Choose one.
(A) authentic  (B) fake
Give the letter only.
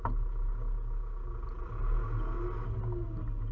A